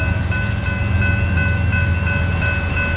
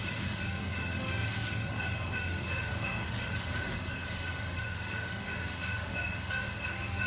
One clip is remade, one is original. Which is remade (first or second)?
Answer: second